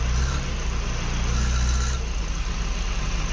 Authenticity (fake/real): real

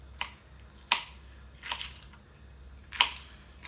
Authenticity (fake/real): real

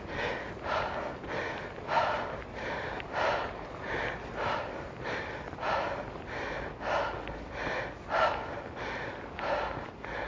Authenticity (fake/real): real